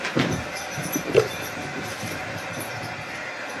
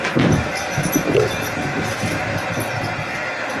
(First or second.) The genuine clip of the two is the second